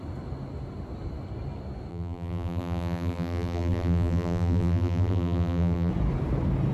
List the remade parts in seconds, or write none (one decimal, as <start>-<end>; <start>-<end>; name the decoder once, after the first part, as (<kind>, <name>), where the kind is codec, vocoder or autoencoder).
1.9-5.9 (vocoder, BigVGAN v2)